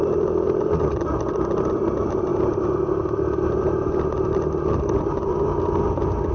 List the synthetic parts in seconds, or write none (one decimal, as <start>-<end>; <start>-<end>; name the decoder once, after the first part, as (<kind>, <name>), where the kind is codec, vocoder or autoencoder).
none